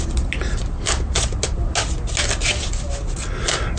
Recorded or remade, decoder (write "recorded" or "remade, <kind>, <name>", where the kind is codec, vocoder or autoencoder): recorded